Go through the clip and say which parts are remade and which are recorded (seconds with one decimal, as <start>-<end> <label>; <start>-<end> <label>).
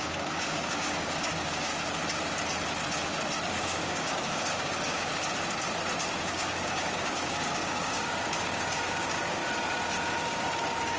0.0-1.7 remade; 1.7-3.5 recorded; 3.5-5.1 remade; 5.1-6.2 recorded; 6.2-9.4 remade; 9.4-10.2 recorded; 10.2-11.0 remade